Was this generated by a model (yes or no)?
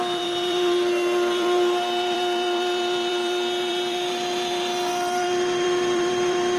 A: yes